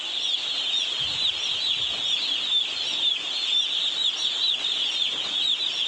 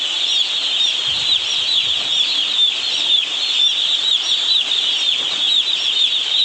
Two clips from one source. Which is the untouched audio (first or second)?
first